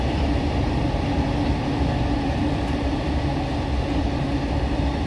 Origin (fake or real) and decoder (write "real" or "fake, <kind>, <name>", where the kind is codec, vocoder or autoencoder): real